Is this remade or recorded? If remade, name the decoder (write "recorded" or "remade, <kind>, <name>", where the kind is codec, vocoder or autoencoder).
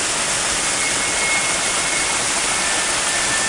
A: recorded